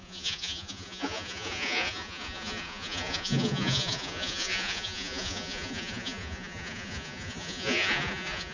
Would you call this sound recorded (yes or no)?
no